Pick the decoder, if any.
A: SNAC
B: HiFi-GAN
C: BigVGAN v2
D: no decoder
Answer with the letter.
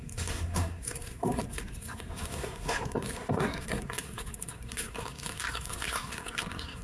A